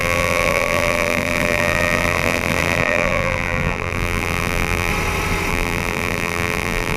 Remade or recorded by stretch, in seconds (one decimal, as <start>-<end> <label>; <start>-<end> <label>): 0.0-4.9 remade; 4.9-5.5 recorded; 5.5-7.0 remade